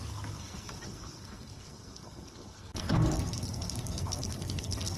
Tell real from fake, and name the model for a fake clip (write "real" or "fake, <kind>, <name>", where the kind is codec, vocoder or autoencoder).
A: fake, codec, SNAC